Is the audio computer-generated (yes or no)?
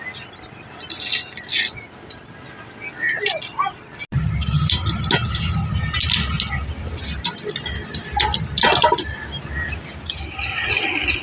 no